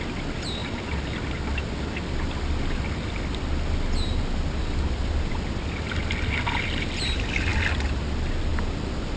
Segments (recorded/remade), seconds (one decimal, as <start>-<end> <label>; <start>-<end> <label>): 0.0-9.2 recorded